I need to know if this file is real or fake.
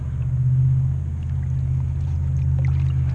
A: real